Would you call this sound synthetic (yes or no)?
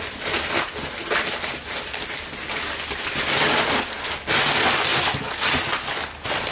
no